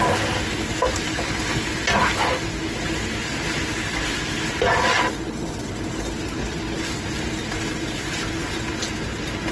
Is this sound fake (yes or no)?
no